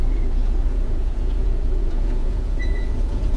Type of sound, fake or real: fake